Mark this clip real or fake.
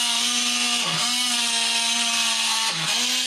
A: fake